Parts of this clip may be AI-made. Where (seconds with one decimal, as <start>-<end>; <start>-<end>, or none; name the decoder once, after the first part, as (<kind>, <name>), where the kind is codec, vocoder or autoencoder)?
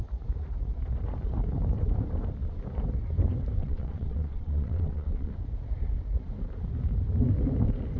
3.6-5.3 (vocoder, WaveNeXt)